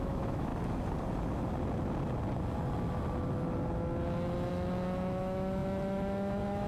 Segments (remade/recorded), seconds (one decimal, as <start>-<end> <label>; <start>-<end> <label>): 0.0-0.5 remade; 0.5-4.5 recorded; 4.5-6.7 remade